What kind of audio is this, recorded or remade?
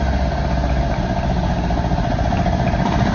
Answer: recorded